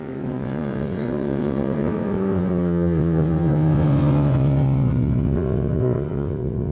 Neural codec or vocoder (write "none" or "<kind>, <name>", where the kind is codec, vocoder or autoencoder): vocoder, WaveNeXt